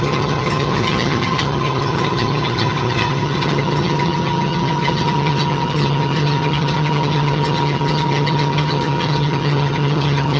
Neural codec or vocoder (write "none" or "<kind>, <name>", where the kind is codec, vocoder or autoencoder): vocoder, HiFi-GAN